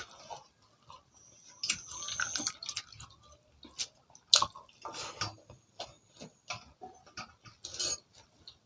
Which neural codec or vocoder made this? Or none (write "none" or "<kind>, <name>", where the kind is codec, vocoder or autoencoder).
none